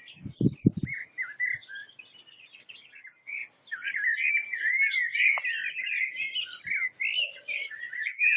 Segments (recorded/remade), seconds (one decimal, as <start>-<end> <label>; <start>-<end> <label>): 0.0-8.4 recorded